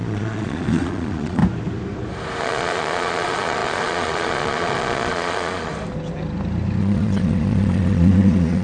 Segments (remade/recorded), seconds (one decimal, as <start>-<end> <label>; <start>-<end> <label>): 0.0-1.4 remade; 1.4-2.4 recorded; 2.4-5.7 remade; 5.7-6.8 recorded; 6.8-8.6 remade